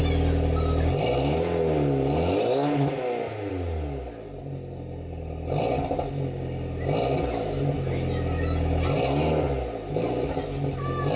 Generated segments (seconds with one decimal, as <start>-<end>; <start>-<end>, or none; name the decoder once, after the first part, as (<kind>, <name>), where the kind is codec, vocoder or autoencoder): none